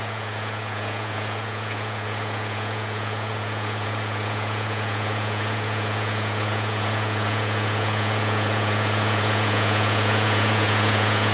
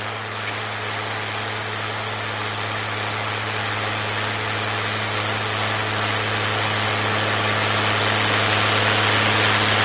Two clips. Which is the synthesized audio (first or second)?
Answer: first